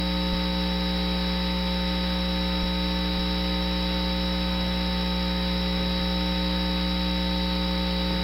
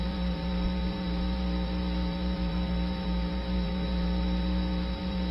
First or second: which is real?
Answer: first